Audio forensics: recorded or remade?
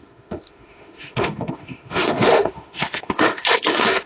remade